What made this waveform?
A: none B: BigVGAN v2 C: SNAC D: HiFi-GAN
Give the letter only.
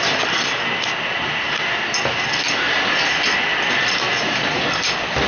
A